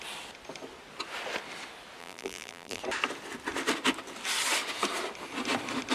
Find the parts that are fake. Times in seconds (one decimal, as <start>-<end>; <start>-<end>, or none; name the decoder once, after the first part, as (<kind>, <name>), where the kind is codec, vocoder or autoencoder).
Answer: 2.0-2.8 (vocoder, BigVGAN v2)